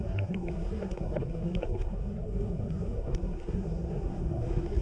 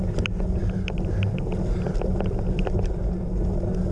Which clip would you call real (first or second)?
second